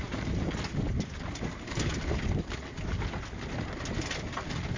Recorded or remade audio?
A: recorded